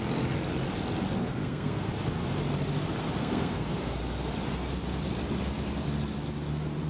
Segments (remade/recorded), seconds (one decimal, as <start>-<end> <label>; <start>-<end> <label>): 0.0-1.2 recorded; 1.2-1.9 remade; 1.9-3.2 recorded; 3.2-4.0 remade; 4.0-6.9 recorded